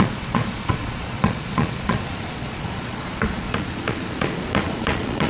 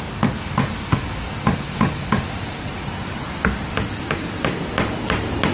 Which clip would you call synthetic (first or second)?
first